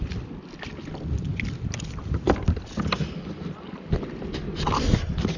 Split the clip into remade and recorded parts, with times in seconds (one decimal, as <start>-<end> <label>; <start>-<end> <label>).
0.0-5.4 recorded